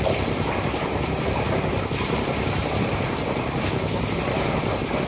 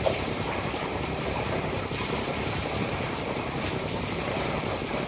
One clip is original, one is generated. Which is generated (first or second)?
second